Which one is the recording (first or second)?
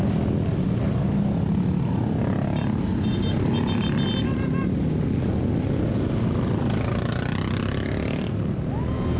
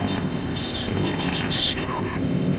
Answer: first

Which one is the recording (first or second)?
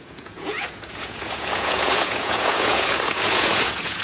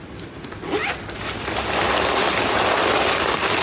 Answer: second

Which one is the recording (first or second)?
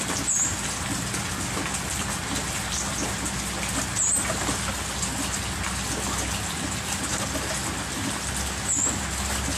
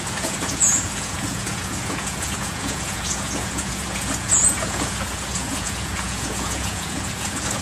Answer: first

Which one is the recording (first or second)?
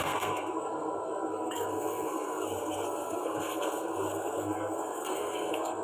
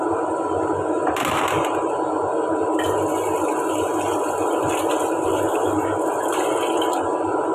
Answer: second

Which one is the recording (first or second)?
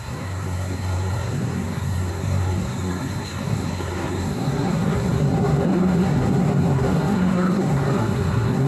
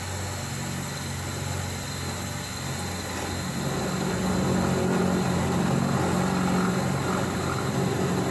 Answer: second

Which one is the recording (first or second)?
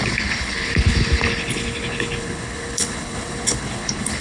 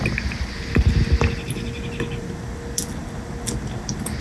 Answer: second